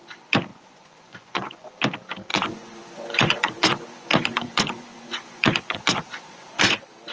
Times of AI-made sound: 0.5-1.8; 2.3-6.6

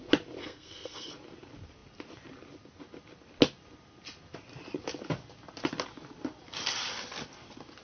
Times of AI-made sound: 0.4-1.1

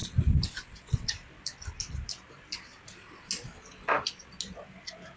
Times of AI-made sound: none

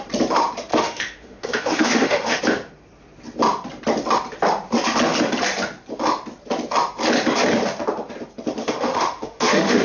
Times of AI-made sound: 0.7-2.4; 8.6-9.8

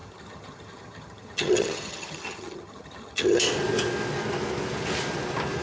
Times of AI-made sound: 0.0-3.4

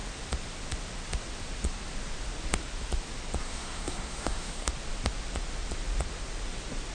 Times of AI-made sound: 3.4-4.7

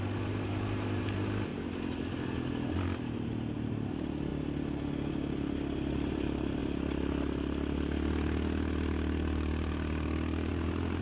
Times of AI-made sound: 0.0-1.5; 3.7-4.3; 6.1-6.6; 10.5-11.0

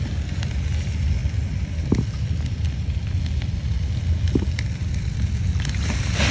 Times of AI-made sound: none